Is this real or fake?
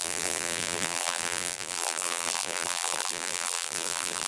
fake